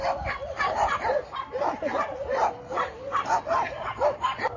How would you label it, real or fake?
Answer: real